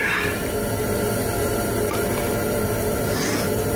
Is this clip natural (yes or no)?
yes